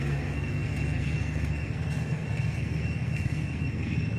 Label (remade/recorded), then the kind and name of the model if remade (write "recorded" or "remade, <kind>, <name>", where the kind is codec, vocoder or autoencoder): remade, codec, SNAC